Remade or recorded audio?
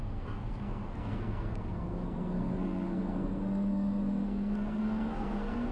remade